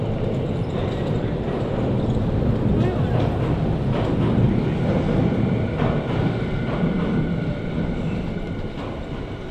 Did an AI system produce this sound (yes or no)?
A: no